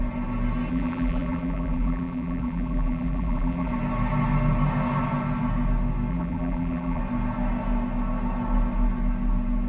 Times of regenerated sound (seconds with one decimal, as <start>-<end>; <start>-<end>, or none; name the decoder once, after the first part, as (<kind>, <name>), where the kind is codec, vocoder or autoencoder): 0.7-3.7 (vocoder, BigVGAN v2); 6.1-7.0